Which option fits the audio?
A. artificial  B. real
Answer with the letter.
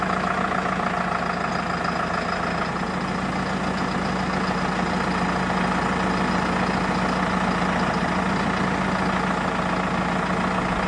B